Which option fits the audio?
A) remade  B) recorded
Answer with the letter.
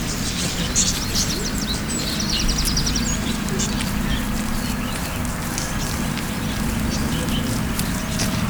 A